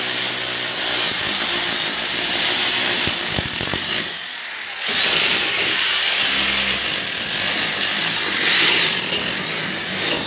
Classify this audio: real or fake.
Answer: real